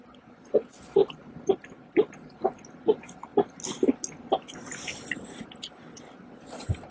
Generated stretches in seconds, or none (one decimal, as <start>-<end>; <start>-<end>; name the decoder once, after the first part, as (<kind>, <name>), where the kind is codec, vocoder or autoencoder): 1.0-2.6 (vocoder, BigVGAN v2)